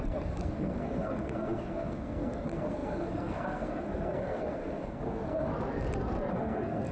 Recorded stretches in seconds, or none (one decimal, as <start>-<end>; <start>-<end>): 5.5-6.3